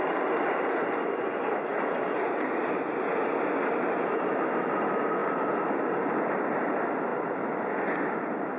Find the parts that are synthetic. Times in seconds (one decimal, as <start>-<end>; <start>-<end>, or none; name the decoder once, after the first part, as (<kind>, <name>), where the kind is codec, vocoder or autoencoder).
none